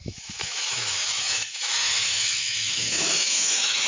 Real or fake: fake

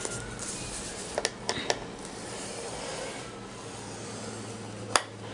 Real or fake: real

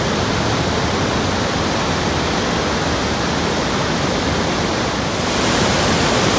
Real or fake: real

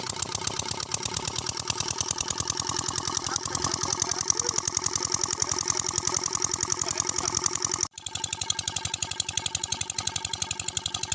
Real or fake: fake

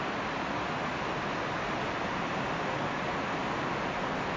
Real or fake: real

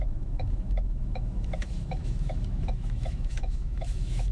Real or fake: fake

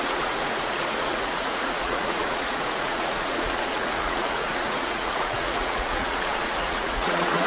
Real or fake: fake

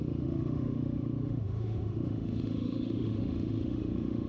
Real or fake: fake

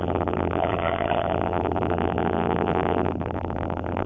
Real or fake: fake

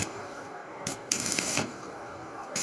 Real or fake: fake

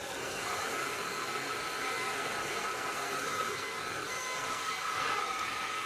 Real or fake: fake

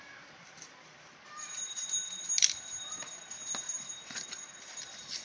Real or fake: fake